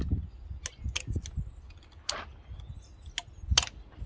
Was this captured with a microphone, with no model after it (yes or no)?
yes